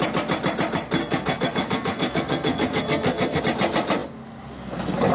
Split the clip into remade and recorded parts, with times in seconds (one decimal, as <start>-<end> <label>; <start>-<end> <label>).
0.0-1.0 recorded; 1.0-3.4 remade; 3.4-5.1 recorded